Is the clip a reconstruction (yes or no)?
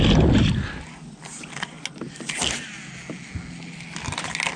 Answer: no